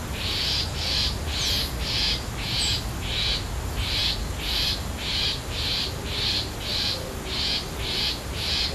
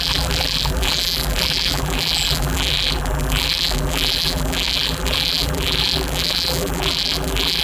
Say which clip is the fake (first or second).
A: second